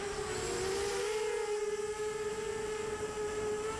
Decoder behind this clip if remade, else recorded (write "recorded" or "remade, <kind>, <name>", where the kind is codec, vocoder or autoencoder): recorded